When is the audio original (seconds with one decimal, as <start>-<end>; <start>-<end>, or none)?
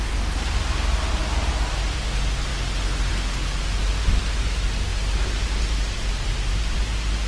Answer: 0.0-7.3